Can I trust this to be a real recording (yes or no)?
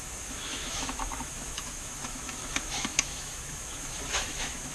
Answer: no